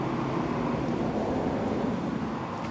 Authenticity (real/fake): real